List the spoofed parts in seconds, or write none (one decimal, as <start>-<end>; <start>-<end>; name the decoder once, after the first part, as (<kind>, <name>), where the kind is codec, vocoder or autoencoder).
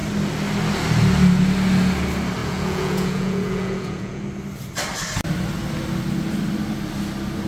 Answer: 2.4-4.2 (vocoder, Vocos)